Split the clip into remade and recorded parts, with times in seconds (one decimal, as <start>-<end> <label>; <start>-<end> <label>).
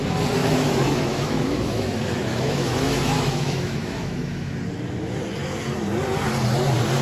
0.0-0.4 recorded; 0.4-4.6 remade; 4.6-7.0 recorded